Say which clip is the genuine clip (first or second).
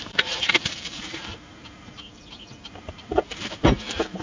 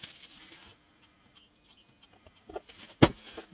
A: second